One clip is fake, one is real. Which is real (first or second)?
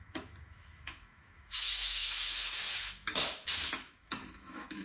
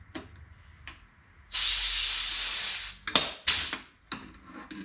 second